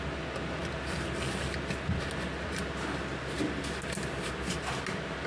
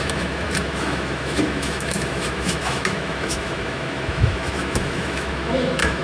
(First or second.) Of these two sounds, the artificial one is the second